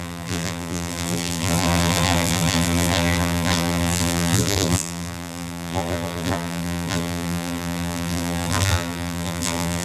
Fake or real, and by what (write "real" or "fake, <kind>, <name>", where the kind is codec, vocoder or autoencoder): fake, vocoder, BigVGAN v2